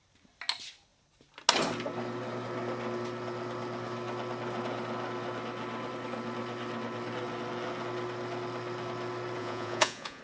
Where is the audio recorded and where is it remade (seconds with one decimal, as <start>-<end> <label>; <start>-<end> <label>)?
0.0-9.4 recorded; 9.4-10.2 remade